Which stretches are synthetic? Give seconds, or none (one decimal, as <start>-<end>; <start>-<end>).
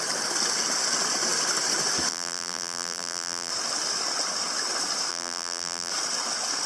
2.1-3.5; 5.1-5.9